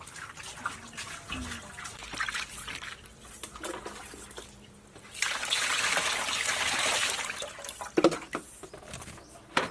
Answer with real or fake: real